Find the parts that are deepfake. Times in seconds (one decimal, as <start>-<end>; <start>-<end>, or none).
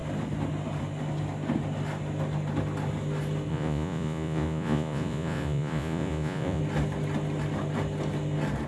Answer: 3.5-6.6